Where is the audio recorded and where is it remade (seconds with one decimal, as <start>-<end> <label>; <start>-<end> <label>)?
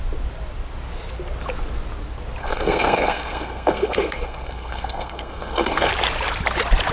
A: 0.0-2.4 recorded; 2.4-5.9 remade; 5.9-6.9 recorded